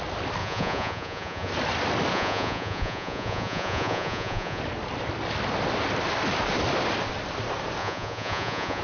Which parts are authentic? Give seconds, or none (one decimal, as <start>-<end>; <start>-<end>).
0.0-0.4; 1.5-2.1; 4.6-7.8